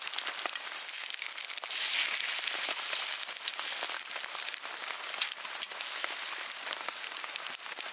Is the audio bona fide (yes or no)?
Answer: yes